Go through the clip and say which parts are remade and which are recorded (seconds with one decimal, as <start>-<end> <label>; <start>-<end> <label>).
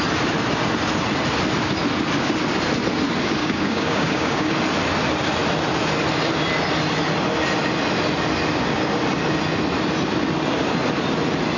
0.0-3.4 recorded; 3.4-4.5 remade; 4.5-11.6 recorded